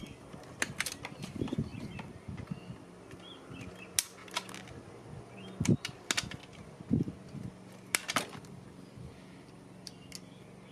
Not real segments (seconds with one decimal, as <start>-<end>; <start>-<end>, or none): none